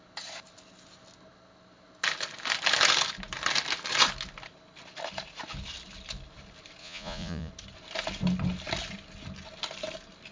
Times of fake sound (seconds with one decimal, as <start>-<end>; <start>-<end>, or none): 6.8-7.5